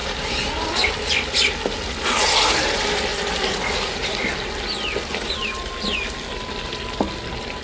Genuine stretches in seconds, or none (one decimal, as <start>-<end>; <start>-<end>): 2.2-7.6